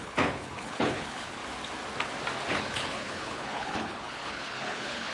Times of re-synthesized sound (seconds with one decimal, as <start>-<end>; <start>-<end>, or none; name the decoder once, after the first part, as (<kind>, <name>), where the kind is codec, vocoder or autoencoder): 0.0-1.4 (codec, HILCodec); 2.5-5.1